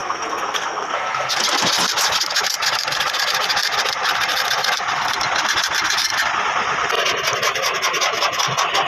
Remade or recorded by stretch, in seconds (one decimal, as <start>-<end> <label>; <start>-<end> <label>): 0.0-1.4 remade; 1.4-8.9 recorded